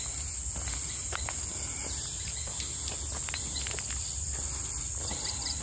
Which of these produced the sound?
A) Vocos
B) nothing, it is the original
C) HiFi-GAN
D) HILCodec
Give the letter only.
B